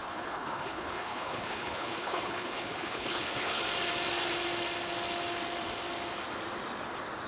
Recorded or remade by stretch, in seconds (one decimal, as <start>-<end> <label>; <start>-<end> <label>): 0.0-3.6 remade; 3.6-7.3 recorded